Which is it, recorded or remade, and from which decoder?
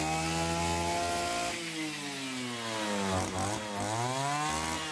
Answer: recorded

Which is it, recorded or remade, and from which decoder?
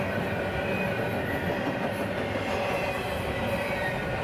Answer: recorded